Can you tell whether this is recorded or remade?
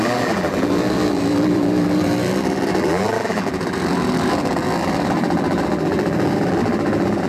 remade